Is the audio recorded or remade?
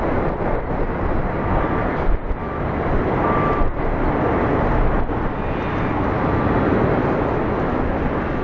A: recorded